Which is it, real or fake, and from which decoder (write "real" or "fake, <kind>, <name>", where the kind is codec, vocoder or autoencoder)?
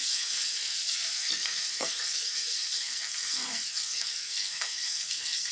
fake, codec, SNAC